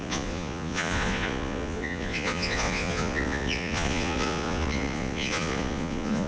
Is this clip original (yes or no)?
no